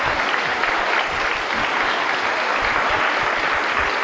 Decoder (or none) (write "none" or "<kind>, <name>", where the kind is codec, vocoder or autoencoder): vocoder, BigVGAN v2